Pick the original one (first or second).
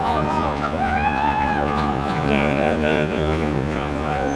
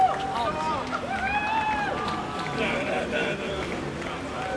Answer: second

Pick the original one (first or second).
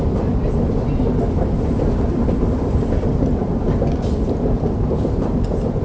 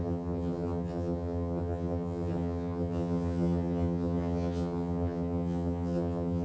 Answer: first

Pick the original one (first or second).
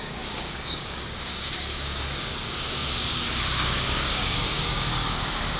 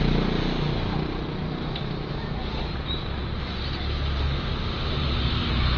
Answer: second